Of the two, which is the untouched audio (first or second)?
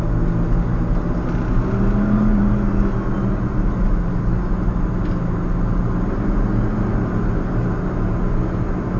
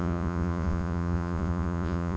first